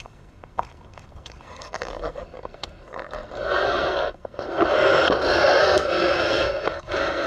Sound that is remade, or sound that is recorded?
remade